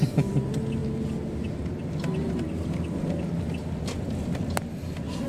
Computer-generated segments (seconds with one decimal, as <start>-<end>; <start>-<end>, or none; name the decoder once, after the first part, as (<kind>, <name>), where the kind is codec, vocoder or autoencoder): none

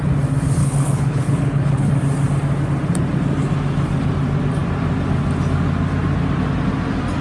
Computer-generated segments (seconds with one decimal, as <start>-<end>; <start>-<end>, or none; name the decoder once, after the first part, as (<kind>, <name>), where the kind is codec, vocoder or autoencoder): 0.6-1.9 (codec, HILCodec)

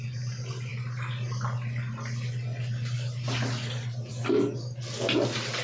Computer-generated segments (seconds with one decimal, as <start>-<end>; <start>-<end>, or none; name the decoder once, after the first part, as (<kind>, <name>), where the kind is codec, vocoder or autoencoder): none

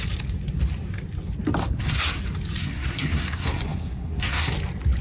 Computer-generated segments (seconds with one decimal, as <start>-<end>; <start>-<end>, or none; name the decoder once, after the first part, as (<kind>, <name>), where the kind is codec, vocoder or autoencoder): 1.6-2.2 (codec, SNAC); 2.6-4.5

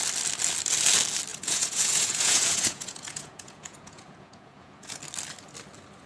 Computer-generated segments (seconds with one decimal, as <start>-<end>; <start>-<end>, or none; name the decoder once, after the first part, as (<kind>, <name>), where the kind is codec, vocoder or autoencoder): 1.3-5.0 (vocoder, Vocos)